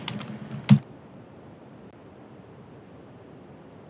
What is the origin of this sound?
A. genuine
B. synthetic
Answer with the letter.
A